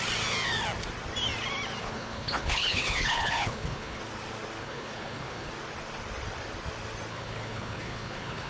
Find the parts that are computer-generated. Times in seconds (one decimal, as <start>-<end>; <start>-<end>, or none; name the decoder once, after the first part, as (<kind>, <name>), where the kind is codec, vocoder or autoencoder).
1.8-4.0 (codec, HILCodec); 4.6-5.5; 7.1-8.5